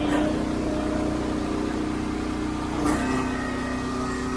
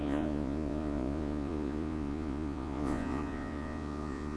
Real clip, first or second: first